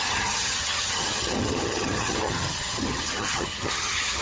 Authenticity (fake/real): fake